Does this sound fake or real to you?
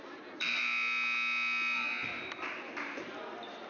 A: real